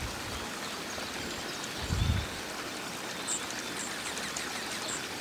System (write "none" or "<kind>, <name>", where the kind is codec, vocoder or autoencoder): none